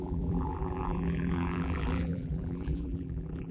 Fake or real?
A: fake